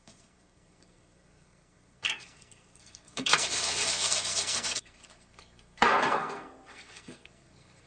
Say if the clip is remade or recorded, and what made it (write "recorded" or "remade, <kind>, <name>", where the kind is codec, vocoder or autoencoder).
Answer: remade, codec, SNAC